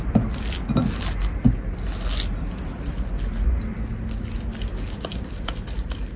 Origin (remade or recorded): recorded